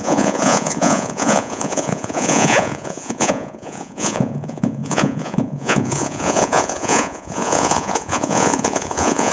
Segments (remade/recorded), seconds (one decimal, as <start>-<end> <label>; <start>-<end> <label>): 0.0-9.3 remade